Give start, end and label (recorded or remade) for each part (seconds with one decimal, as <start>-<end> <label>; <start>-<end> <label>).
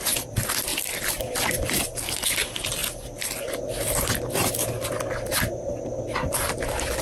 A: 0.0-7.0 recorded